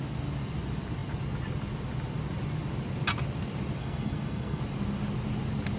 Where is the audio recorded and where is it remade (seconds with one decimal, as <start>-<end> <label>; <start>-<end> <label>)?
0.0-3.8 recorded; 3.8-4.6 remade; 4.6-5.8 recorded